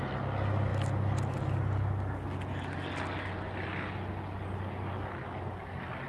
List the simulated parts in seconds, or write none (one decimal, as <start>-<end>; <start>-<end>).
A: none